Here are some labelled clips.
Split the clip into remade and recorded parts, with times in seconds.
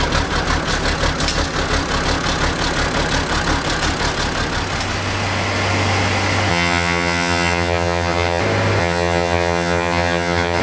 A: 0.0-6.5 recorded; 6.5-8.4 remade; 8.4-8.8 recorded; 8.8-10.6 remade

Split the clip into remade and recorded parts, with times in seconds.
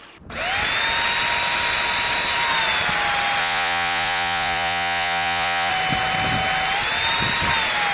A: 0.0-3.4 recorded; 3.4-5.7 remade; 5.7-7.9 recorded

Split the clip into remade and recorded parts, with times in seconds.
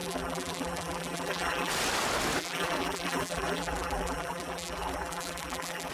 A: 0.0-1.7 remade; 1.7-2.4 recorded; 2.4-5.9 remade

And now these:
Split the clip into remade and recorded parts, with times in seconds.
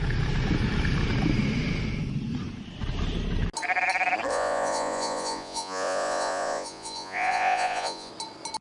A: 0.0-4.3 recorded; 4.3-8.1 remade; 8.1-8.6 recorded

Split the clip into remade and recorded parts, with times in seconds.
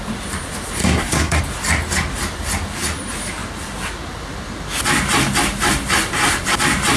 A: 0.0-0.8 recorded; 0.8-1.4 remade; 1.4-7.0 recorded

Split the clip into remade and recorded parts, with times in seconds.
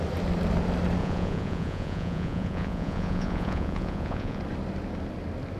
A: 0.0-1.0 recorded; 1.0-4.4 remade; 4.4-5.6 recorded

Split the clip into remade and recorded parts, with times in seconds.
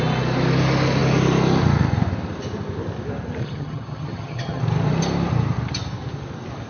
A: 0.0-3.4 recorded; 3.4-4.6 remade; 4.6-6.7 recorded